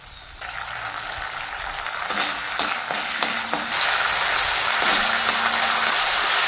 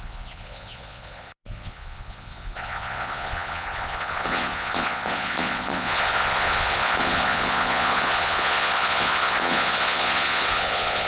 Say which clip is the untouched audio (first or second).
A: first